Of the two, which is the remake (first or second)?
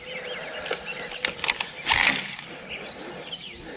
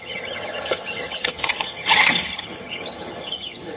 second